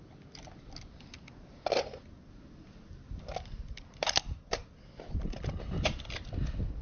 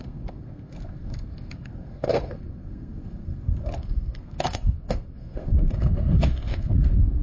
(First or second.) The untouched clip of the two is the first